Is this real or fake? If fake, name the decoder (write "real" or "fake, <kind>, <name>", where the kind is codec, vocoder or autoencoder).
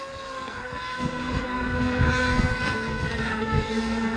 fake, codec, SNAC